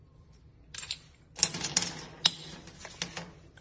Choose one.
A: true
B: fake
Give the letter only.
A